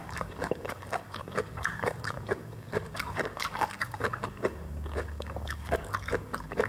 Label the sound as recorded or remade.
remade